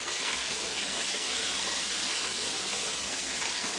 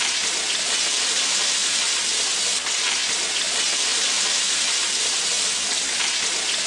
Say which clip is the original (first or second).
second